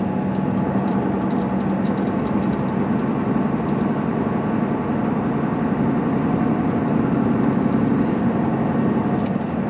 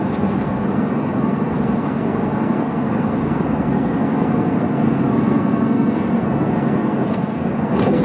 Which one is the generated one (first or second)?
second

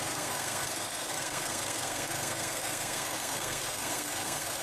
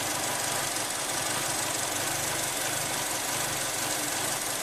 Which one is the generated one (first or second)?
first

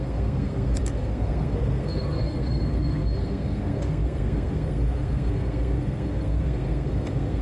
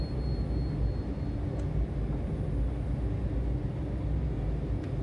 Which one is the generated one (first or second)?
first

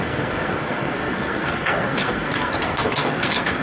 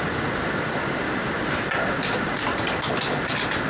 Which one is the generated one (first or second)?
first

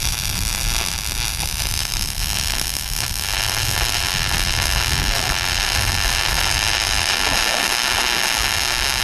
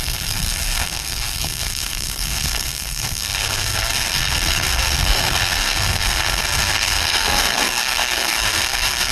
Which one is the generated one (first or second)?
second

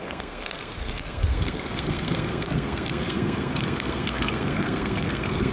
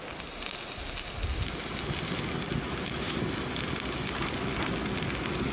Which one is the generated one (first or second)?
first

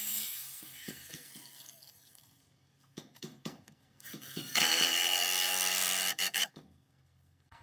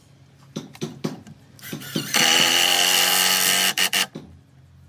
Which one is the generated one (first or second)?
first